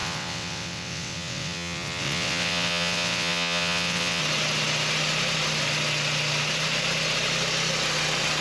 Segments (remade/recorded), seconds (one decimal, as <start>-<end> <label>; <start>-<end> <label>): 0.0-4.2 remade; 4.2-8.4 recorded